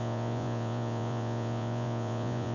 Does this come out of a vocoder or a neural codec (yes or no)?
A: yes